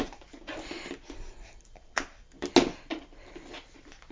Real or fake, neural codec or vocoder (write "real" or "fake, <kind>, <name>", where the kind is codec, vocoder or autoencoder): real